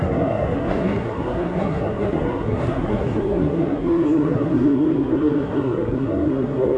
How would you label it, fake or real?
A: fake